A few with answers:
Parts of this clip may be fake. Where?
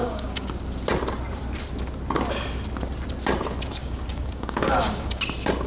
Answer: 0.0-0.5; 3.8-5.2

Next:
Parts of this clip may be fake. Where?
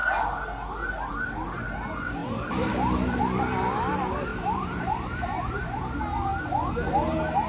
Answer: 2.2-3.2; 4.3-5.8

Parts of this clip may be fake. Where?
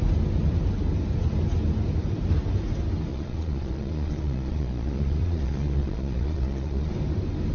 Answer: 3.1-6.9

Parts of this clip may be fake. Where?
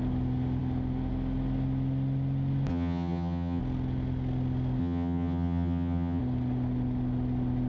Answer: 2.7-3.6; 4.8-6.2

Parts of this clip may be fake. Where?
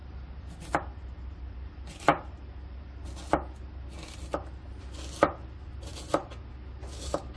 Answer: none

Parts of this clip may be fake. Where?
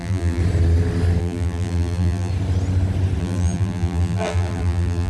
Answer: 0.0-0.4; 1.2-2.3; 3.2-5.1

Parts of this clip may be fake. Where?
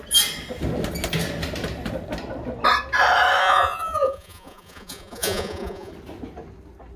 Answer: 3.4-5.9